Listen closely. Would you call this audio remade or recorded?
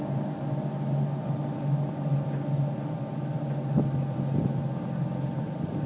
recorded